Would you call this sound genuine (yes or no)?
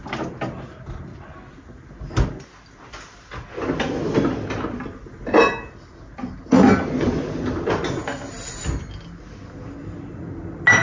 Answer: yes